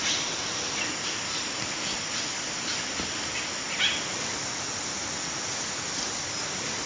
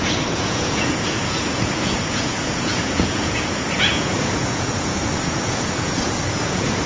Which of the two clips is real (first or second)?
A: first